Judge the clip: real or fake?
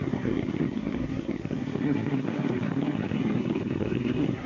fake